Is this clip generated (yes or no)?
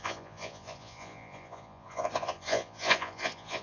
yes